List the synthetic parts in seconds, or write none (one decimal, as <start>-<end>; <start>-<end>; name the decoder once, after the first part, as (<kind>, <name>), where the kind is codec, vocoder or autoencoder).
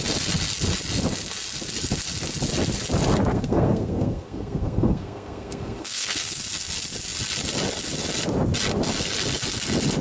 3.3-6.4 (codec, SNAC)